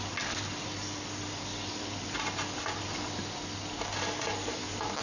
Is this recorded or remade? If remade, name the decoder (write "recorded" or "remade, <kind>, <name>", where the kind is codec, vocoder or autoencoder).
recorded